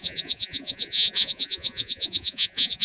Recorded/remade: remade